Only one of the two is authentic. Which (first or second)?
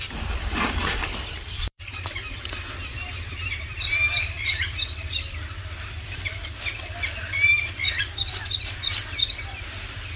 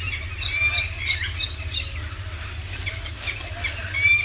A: second